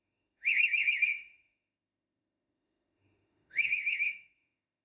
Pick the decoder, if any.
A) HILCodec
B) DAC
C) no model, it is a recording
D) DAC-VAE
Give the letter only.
D